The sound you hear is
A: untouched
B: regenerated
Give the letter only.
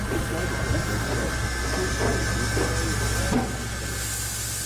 A